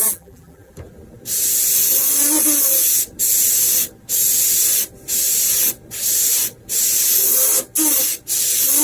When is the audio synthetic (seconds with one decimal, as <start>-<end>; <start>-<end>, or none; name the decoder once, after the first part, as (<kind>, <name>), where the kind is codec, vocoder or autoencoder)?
0.0-0.7 (vocoder, BigVGAN v2)